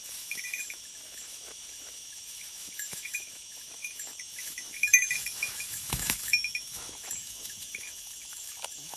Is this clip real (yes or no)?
no